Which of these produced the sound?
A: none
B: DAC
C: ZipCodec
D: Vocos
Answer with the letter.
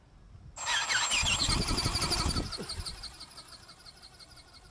A